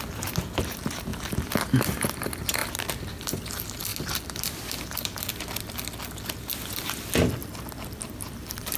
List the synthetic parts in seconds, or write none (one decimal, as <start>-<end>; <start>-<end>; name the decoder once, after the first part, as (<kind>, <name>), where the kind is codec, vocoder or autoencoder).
7.4-8.8 (vocoder, BigVGAN v2)